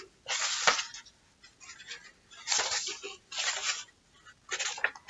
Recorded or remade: recorded